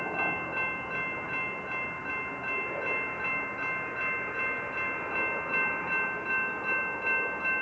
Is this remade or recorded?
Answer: recorded